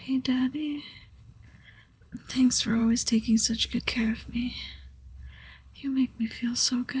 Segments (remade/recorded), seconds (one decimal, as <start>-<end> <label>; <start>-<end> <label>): 0.0-2.8 remade; 2.8-3.8 recorded; 3.8-4.4 remade; 4.4-5.1 recorded; 5.1-7.0 remade